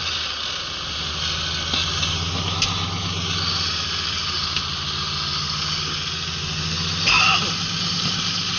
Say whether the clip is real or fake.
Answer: real